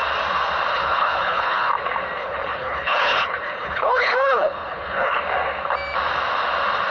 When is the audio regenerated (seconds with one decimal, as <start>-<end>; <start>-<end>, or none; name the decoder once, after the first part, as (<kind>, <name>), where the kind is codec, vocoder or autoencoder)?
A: 0.7-1.7 (codec, HILCodec); 2.2-5.2